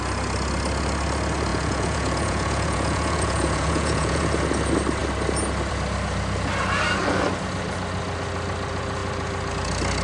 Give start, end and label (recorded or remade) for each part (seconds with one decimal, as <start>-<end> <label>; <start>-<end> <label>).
0.0-1.5 recorded; 1.5-4.3 remade; 4.3-10.0 recorded